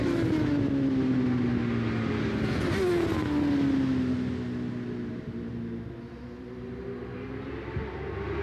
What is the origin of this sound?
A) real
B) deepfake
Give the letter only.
A